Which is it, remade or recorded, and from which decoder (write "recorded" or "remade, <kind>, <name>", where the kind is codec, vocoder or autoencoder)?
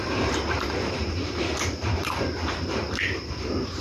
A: remade, vocoder, BigVGAN v2